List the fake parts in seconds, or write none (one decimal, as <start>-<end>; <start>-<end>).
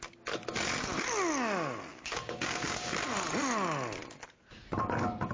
1.9-2.9